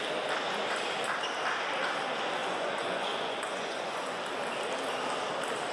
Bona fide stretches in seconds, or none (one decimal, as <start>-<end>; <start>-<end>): 0.0-2.4; 4.2-5.7